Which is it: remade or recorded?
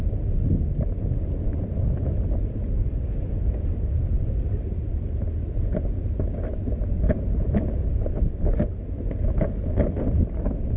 recorded